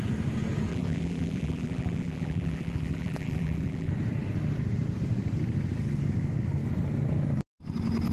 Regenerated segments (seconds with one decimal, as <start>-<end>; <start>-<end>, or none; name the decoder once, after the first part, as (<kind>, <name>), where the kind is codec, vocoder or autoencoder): 0.7-3.9 (vocoder, BigVGAN v2)